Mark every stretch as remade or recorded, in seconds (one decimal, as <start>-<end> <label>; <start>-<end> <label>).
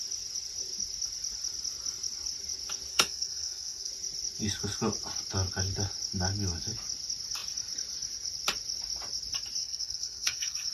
0.0-2.9 recorded; 2.9-3.9 remade; 3.9-9.6 recorded; 9.6-10.7 remade